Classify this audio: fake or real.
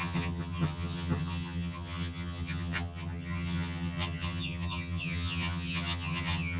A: fake